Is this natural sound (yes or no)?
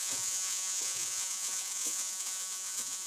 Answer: no